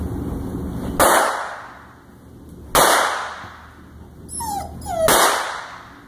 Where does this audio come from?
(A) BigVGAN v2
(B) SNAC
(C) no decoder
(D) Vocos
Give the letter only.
C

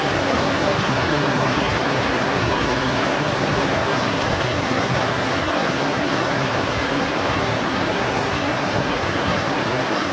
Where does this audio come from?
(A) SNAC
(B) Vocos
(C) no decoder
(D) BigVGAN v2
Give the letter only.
A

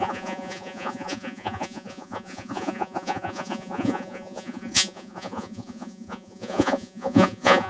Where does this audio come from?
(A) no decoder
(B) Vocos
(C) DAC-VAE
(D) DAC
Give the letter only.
B